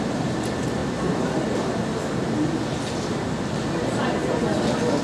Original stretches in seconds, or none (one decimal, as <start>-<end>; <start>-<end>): 0.0-5.0